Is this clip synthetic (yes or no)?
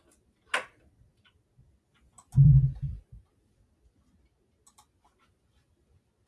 no